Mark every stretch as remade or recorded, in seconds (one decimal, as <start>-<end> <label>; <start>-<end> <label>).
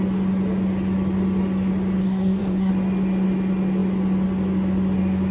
0.0-2.0 recorded; 2.0-2.7 remade; 2.7-5.3 recorded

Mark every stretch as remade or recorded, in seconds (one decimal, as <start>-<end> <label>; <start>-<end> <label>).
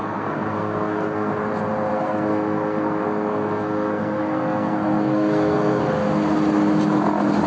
0.0-1.3 remade; 1.3-1.9 recorded; 1.9-5.8 remade; 5.8-7.5 recorded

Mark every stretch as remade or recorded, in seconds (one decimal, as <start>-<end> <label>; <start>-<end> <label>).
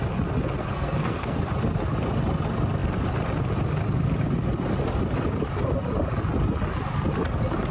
0.0-0.6 recorded; 0.6-1.4 remade; 1.4-7.7 recorded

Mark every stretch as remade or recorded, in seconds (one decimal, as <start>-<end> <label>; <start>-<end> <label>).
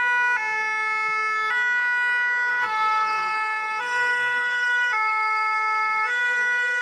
0.0-2.5 recorded; 2.5-6.8 remade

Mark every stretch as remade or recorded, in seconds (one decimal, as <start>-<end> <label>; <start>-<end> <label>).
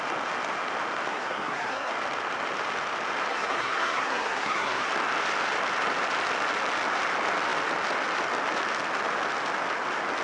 0.0-1.1 recorded; 1.1-1.9 remade; 1.9-3.3 recorded; 3.3-4.9 remade; 4.9-10.2 recorded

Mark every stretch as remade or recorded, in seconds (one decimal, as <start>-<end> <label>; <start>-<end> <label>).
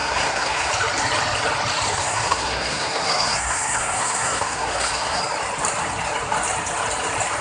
0.0-0.7 remade; 0.7-2.0 recorded; 2.0-5.2 remade; 5.2-7.4 recorded